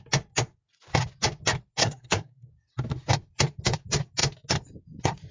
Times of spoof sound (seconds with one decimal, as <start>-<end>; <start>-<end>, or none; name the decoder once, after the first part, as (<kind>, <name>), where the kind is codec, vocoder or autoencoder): 1.8-2.5 (codec, SNAC)

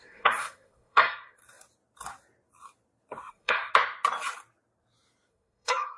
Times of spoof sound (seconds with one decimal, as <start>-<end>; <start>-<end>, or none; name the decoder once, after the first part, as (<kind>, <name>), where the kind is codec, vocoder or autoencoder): 0.0-1.4 (codec, SNAC); 3.3-3.7; 5.3-6.0

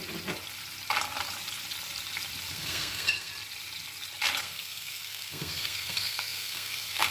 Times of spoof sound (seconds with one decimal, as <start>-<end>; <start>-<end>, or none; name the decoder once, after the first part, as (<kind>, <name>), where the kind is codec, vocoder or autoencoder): 2.5-3.3 (codec, SNAC); 4.4-7.1

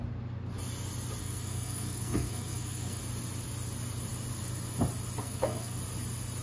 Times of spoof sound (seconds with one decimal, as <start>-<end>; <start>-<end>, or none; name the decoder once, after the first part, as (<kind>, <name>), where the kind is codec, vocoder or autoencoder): 1.2-3.0 (codec, SNAC); 5.2-5.8

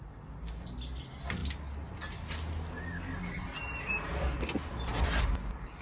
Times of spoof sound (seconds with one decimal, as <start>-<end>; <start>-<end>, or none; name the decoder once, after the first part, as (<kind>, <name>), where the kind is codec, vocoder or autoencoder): none